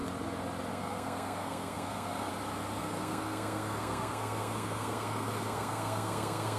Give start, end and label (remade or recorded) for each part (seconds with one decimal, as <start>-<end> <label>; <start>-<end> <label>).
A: 0.0-0.7 recorded; 0.7-2.3 remade; 2.3-2.8 recorded; 2.8-6.6 remade